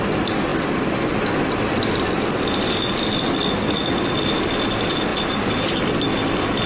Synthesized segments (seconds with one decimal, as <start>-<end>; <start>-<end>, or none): none